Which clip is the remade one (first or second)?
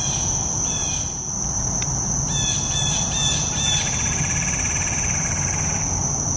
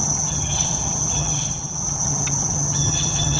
second